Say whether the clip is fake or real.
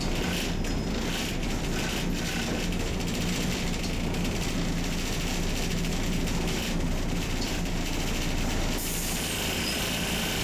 fake